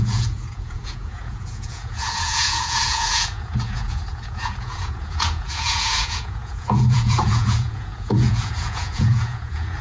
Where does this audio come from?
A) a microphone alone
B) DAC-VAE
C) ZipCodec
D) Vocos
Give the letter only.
D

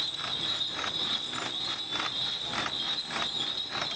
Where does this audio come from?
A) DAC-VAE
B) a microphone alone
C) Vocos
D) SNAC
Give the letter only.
B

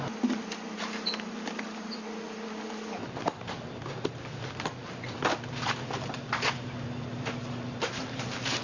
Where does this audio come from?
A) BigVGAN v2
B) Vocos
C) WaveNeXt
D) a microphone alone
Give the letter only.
D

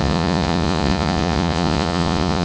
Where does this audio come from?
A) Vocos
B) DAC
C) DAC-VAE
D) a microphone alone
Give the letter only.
A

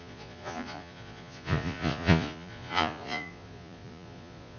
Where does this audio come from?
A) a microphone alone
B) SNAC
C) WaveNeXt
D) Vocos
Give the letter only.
D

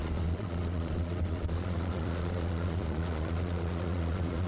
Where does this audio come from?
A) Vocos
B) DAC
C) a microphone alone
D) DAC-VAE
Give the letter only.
A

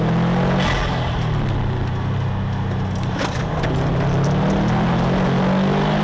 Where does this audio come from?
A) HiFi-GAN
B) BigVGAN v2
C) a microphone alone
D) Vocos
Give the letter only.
C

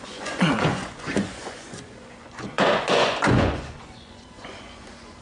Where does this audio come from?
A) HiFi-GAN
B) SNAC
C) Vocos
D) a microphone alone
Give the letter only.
C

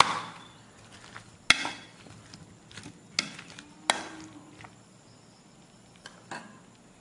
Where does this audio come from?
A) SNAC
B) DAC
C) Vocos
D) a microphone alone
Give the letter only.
D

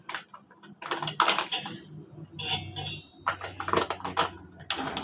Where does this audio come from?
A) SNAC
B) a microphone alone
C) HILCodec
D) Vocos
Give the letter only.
B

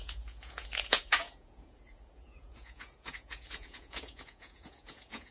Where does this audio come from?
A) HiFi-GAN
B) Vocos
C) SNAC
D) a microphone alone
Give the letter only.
B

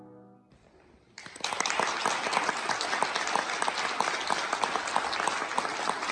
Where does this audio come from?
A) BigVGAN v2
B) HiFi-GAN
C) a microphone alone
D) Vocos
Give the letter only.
C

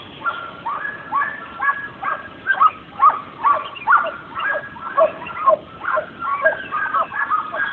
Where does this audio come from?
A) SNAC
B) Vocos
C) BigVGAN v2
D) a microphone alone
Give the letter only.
D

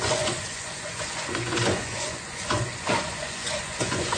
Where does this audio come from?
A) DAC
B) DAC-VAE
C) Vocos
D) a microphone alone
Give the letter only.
C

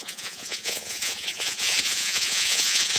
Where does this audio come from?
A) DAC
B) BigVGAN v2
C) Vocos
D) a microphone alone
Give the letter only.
C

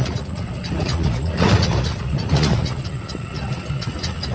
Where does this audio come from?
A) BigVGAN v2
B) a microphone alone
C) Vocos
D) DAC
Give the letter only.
C